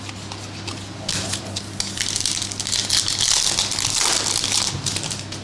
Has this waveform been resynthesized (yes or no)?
no